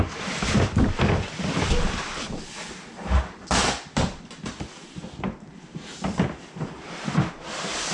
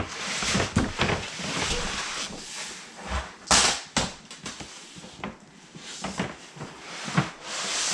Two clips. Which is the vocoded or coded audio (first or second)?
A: first